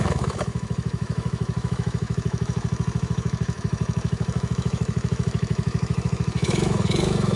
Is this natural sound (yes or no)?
no